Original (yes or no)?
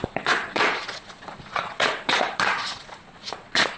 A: no